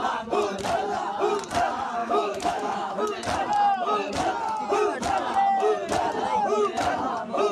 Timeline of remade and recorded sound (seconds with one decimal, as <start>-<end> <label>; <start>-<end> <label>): 0.0-2.0 recorded; 2.0-3.0 remade; 3.0-7.5 recorded